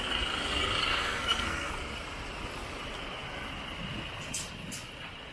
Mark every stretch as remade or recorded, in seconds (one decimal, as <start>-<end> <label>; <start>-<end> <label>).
0.0-0.9 recorded; 0.9-1.7 remade; 1.7-5.3 recorded